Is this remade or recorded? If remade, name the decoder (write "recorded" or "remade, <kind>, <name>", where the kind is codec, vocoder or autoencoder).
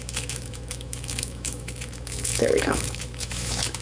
remade, autoencoder, DAC-VAE